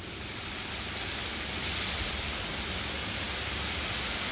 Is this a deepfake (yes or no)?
no